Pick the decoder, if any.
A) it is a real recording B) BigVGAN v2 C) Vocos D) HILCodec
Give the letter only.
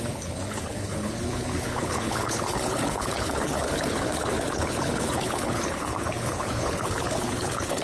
D